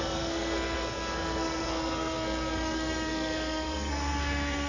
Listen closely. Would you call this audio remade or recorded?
remade